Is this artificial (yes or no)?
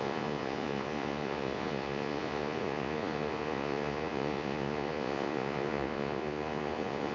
yes